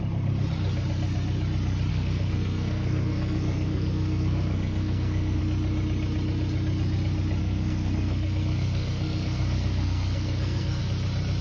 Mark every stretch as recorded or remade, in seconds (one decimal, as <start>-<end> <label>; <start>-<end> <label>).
0.0-1.9 recorded; 1.9-5.4 remade; 5.4-7.4 recorded; 7.4-10.8 remade; 10.8-11.4 recorded